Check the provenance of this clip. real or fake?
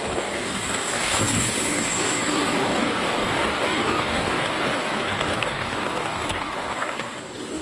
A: fake